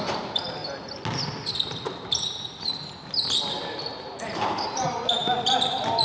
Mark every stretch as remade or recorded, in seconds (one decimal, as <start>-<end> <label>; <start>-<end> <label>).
0.0-0.6 remade; 0.6-4.2 recorded; 4.2-6.0 remade